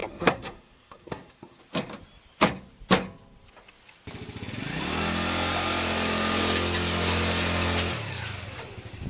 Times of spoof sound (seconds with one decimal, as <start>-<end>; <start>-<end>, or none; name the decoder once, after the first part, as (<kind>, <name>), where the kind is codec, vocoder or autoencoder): 0.0-1.6 (codec, SNAC)